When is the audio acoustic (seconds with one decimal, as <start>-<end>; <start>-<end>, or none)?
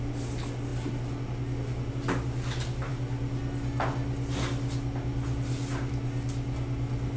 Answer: 0.0-7.2